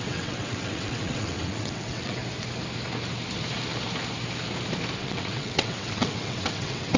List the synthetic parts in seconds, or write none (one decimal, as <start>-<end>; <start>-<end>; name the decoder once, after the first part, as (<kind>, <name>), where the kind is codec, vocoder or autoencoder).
0.0-2.2 (vocoder, WaveNeXt); 5.0-7.0